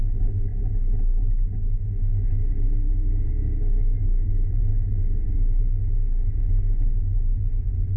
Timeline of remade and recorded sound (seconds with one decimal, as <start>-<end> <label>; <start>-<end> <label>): 0.0-3.4 recorded; 3.4-4.3 remade; 4.3-8.0 recorded